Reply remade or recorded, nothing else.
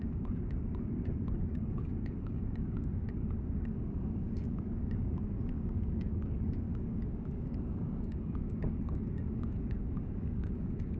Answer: remade